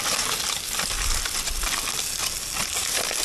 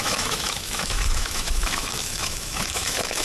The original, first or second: first